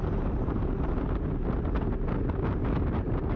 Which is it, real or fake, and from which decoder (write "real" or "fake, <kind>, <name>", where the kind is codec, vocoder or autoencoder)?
real